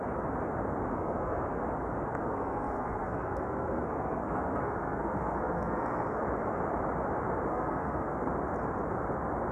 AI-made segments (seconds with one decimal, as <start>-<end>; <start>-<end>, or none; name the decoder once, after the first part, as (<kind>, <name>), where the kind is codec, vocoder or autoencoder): 0.9-1.6 (codec, SNAC); 2.2-6.2; 7.5-8.3